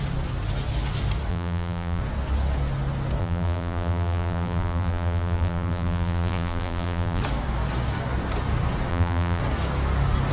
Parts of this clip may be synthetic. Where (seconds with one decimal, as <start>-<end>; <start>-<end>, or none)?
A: 1.3-2.0; 3.2-7.2; 8.9-9.4

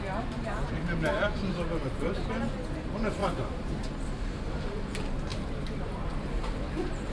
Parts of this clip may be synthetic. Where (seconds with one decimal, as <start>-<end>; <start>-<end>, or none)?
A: 1.8-2.3; 5.3-6.5

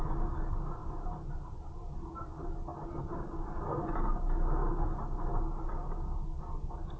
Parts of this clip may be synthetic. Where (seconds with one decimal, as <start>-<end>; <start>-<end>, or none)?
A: none

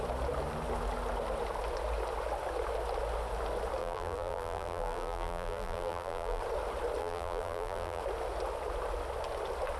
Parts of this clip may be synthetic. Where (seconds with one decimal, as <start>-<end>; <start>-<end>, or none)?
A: 3.8-6.4; 7.0-8.0

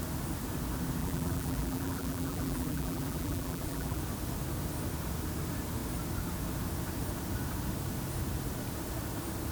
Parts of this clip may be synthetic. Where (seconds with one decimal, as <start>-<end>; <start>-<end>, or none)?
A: 1.0-4.0

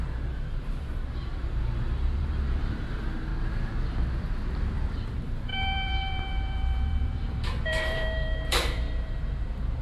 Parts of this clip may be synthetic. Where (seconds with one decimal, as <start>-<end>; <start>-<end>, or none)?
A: 0.0-3.3; 4.9-9.8